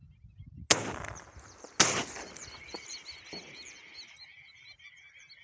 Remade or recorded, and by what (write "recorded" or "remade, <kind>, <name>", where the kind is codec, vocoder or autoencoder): recorded